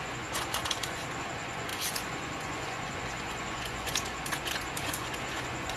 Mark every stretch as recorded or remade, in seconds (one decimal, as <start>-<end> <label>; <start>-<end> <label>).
0.0-5.8 remade